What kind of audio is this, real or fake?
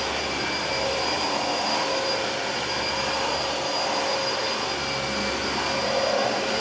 real